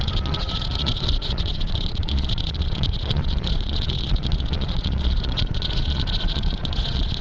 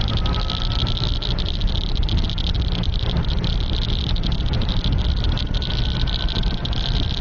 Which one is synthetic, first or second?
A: first